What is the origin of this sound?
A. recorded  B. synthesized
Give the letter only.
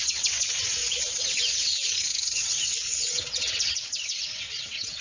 B